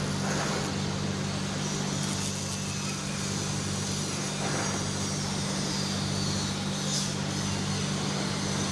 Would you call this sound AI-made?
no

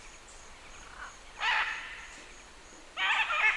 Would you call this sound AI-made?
no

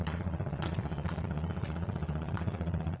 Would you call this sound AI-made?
yes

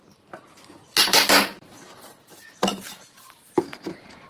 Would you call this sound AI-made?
yes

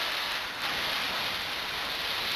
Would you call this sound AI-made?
no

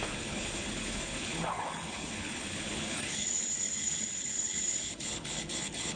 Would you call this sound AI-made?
yes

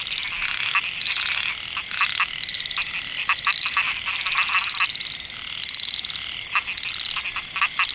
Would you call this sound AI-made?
no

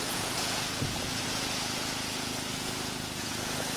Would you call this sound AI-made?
yes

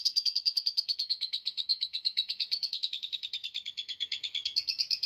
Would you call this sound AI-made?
yes